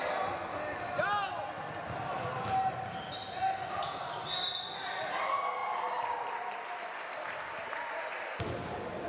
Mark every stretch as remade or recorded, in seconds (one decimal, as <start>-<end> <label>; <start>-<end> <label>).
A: 0.0-9.1 recorded